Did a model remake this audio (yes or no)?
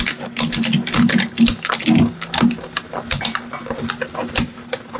no